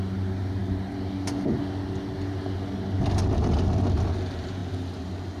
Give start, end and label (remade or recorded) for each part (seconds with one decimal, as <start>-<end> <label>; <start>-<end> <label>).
0.0-4.6 recorded; 4.6-5.4 remade